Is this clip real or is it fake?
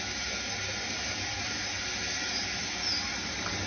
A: real